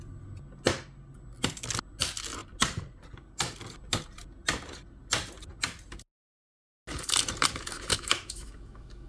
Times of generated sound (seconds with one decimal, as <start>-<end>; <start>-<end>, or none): 7.9-9.1